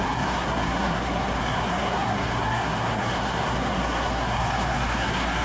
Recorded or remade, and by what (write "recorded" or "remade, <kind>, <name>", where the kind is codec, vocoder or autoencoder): remade, codec, SNAC